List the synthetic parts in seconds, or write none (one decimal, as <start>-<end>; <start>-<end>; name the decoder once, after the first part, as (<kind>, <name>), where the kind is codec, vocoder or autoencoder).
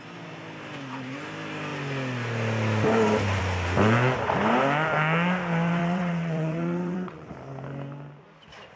5.8-7.3 (vocoder, WaveNeXt)